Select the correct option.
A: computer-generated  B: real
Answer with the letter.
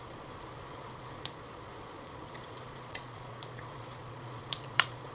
A